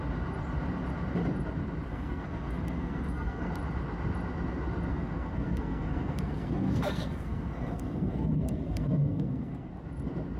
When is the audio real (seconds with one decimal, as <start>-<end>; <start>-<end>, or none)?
0.0-1.9; 3.5-4.9; 9.7-10.4